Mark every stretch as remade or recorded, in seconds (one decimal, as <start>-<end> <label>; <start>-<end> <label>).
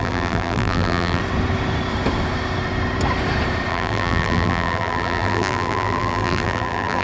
0.0-1.2 remade; 1.2-3.7 recorded; 3.7-7.0 remade